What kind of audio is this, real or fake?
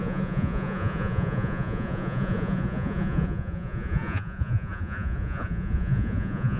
fake